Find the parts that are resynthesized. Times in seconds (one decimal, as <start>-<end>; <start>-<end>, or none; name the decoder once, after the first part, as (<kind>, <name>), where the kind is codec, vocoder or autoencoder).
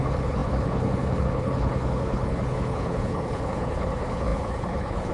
0.0-5.1 (codec, HILCodec)